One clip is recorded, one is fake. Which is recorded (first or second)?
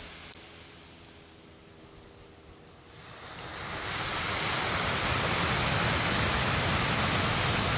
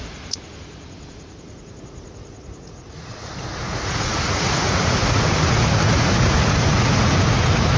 first